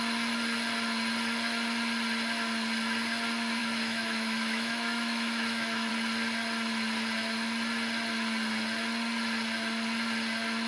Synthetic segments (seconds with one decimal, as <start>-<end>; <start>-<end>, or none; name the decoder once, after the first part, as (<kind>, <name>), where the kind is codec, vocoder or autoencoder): 3.6-5.9 (autoencoder, DAC-VAE)